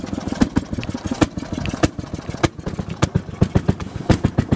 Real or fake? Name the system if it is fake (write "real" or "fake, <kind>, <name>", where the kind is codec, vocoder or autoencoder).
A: real